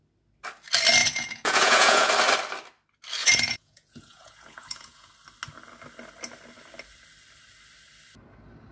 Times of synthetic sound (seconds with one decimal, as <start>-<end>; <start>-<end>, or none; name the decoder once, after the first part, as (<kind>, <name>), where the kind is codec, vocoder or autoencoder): 1.0-2.1 (vocoder, Vocos); 3.2-5.1